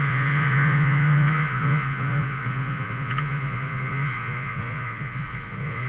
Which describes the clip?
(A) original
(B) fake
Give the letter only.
B